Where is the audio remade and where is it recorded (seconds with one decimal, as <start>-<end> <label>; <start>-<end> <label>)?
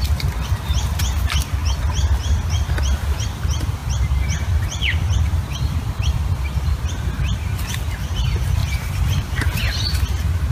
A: 0.0-3.8 recorded; 3.8-6.8 remade; 6.8-8.6 recorded; 8.6-9.6 remade; 9.6-10.5 recorded